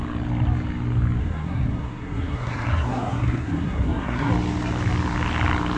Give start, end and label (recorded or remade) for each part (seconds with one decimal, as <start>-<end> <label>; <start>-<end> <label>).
0.0-1.2 recorded; 1.2-4.3 remade; 4.3-5.8 recorded